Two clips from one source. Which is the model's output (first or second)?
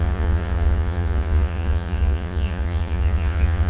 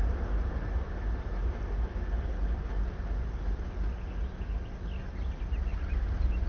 first